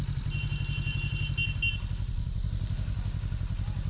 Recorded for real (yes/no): yes